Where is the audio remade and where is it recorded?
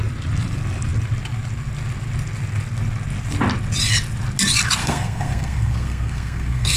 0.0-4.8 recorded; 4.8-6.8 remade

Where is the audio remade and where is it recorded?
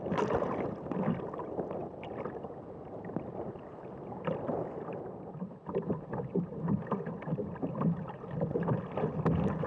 0.0-9.7 recorded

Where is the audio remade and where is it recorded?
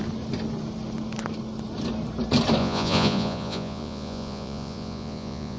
0.0-2.6 recorded; 2.6-5.6 remade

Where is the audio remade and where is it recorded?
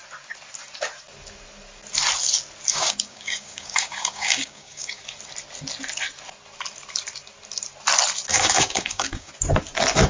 0.0-2.7 recorded; 2.7-5.0 remade; 5.0-8.3 recorded; 8.3-9.3 remade; 9.3-10.1 recorded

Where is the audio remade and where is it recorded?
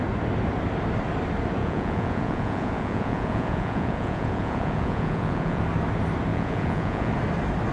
0.0-1.6 recorded; 1.6-5.6 remade; 5.6-6.3 recorded; 6.3-7.1 remade; 7.1-7.7 recorded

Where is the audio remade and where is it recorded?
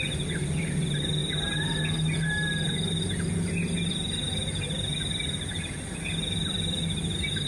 0.0-7.5 recorded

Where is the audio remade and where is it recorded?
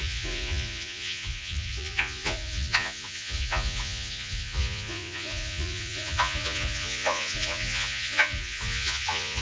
0.0-9.4 remade